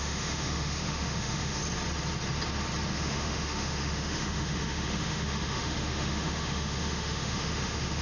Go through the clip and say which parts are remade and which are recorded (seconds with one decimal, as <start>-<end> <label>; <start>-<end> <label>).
0.0-1.6 remade; 1.6-2.9 recorded; 2.9-8.0 remade